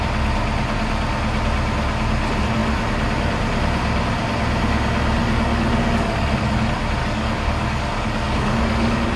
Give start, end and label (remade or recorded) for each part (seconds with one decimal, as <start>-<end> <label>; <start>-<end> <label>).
0.0-5.2 recorded; 5.2-6.5 remade; 6.5-7.0 recorded; 7.0-9.2 remade